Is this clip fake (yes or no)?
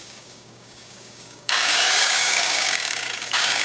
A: yes